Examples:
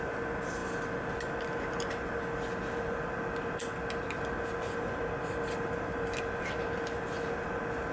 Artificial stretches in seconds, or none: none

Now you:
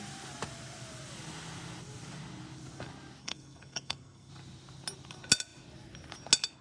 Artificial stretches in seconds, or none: 3.2-4.3 (codec, SNAC)

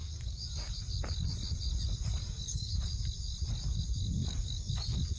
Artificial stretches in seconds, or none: 0.0-0.7 (codec, DAC); 2.2-2.7; 4.2-4.7

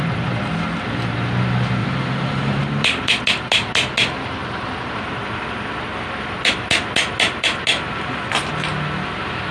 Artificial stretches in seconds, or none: 1.8-3.2 (vocoder, BigVGAN v2); 7.7-8.5

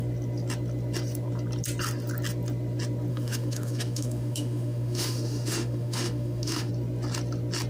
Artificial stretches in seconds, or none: 3.1-6.7 (autoencoder, DAC-VAE)

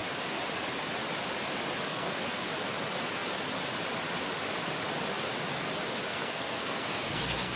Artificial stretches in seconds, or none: 1.9-2.5 (codec, SNAC); 6.1-7.6

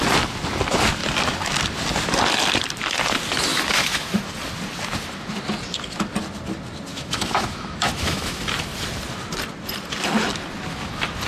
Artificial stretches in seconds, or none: 3.5-4.2 (autoencoder, DAC-VAE); 6.9-8.4

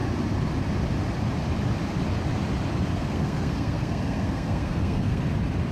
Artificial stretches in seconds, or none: 2.9-5.2 (codec, SNAC)